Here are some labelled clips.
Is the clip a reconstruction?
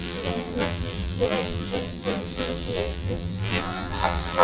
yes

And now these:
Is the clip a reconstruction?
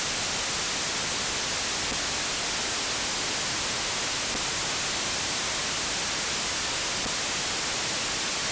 no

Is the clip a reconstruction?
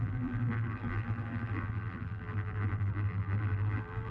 yes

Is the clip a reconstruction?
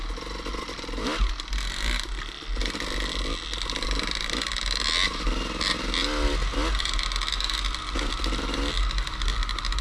no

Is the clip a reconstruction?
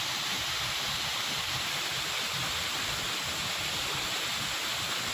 no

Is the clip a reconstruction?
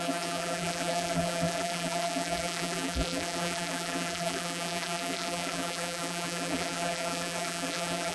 yes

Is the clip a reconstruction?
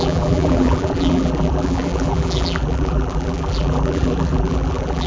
yes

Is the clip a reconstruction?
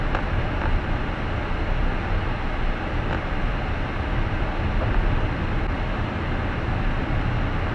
no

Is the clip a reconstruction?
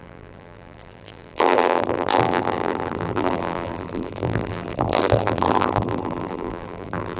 yes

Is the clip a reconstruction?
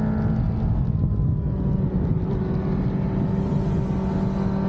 no